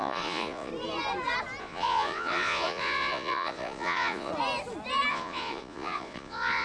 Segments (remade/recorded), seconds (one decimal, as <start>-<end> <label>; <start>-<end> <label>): 0.0-0.7 remade; 0.7-1.6 recorded; 1.6-4.3 remade; 4.3-5.1 recorded; 5.1-6.6 remade